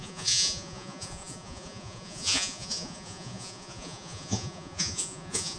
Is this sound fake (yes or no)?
yes